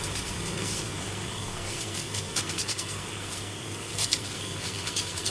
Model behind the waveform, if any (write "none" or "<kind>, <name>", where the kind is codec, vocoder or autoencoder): codec, SNAC